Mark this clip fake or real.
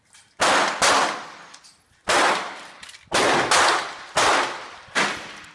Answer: real